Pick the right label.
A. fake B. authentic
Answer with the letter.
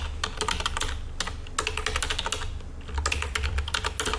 B